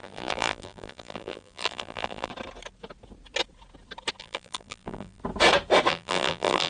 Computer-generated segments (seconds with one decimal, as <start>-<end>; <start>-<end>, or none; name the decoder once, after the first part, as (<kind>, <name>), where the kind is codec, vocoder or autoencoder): 0.0-2.3 (vocoder, BigVGAN v2); 4.2-5.2; 5.9-6.7